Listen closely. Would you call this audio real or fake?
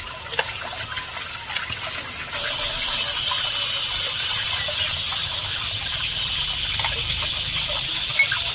real